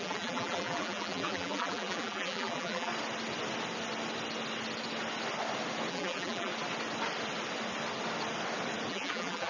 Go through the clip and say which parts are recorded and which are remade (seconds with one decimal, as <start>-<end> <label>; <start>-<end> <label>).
0.0-2.9 remade; 2.9-5.9 recorded; 5.9-6.5 remade; 6.5-8.9 recorded; 8.9-9.5 remade